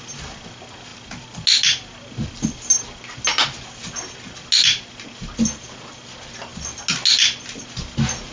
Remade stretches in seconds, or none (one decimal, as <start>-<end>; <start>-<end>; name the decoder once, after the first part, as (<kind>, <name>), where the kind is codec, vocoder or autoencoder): none